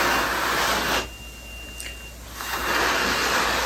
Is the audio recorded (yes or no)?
yes